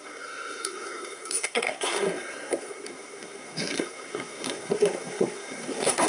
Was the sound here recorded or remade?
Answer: remade